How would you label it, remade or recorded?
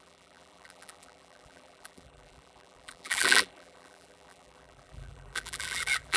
remade